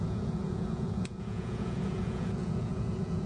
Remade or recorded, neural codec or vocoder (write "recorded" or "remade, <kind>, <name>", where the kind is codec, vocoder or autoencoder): remade, vocoder, Vocos